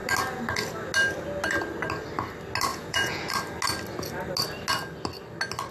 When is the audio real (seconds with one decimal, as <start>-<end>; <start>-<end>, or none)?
0.0-2.7; 3.3-5.7